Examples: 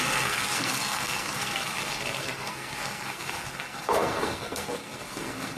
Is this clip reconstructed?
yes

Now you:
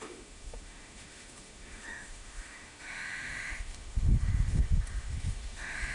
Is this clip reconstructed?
yes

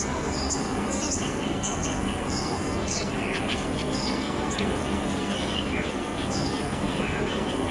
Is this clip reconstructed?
yes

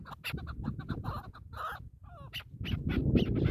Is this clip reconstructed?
no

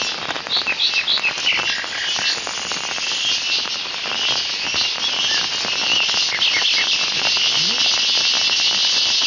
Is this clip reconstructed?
no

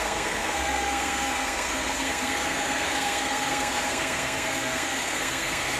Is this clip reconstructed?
yes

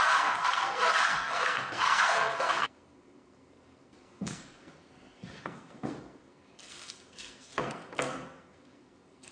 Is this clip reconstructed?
yes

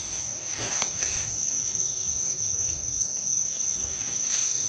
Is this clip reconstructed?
yes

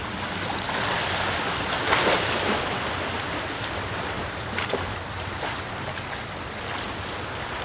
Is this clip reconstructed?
no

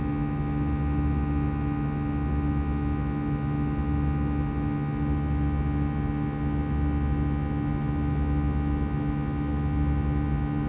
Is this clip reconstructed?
no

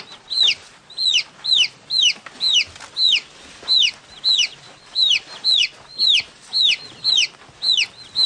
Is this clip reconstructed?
no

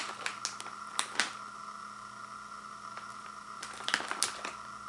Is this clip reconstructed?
no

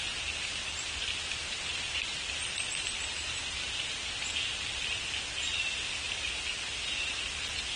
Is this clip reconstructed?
no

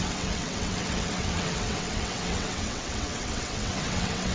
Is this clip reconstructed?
yes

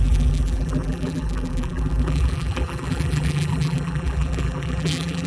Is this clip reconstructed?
yes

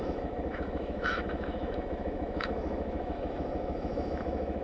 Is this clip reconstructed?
yes